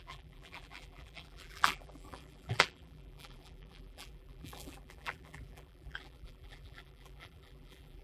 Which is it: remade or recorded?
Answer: remade